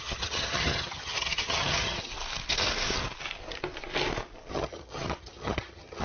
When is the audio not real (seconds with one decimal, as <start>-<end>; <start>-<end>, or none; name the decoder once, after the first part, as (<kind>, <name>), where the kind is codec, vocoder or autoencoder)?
0.0-2.1 (vocoder, HiFi-GAN); 4.5-6.0